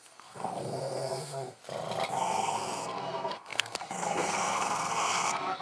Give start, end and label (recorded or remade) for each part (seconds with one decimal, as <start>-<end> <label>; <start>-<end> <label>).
0.0-1.6 remade; 1.6-2.1 recorded; 2.1-5.6 remade